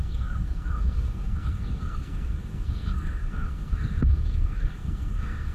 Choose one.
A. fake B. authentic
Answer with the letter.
A